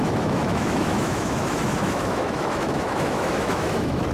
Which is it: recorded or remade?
remade